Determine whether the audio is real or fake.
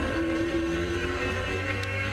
fake